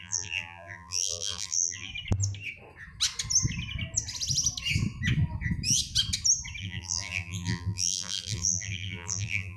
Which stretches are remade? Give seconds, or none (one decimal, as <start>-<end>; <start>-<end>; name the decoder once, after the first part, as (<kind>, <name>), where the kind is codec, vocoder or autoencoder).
0.0-1.9 (vocoder, BigVGAN v2); 6.6-9.6